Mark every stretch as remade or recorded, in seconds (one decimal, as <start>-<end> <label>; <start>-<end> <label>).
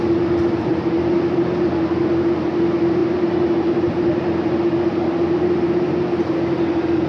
0.0-7.1 recorded